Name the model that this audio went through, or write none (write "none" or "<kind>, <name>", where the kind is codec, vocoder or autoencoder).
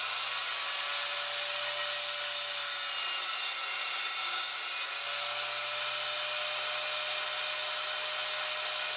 none